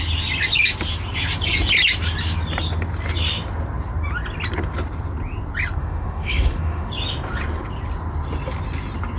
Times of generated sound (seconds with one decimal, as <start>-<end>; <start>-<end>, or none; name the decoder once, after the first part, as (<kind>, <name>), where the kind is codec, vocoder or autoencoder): 5.8-6.9 (autoencoder, DAC-VAE)